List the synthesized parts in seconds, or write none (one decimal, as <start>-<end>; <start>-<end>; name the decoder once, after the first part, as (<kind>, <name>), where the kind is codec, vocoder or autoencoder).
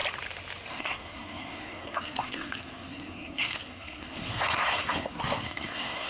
0.7-6.1 (codec, SNAC)